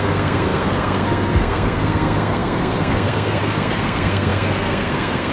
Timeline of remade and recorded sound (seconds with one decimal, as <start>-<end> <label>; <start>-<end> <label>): 0.0-5.3 remade